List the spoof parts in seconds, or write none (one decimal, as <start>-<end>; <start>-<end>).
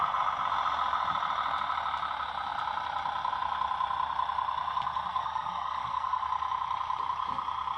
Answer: 5.1-6.2